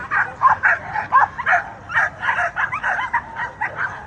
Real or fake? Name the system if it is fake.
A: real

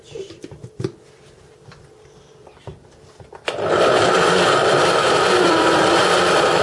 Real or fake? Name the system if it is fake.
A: fake, vocoder, BigVGAN v2